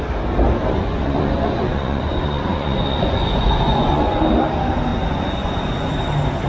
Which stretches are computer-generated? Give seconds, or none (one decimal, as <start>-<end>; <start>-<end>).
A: 0.7-4.2; 4.9-5.9